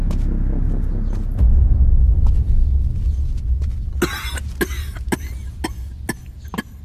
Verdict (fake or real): real